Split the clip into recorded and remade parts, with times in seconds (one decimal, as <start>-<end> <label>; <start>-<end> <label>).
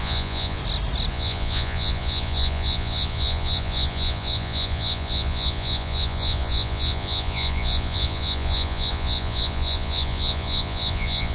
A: 0.0-0.6 remade; 0.6-1.1 recorded; 1.1-11.3 remade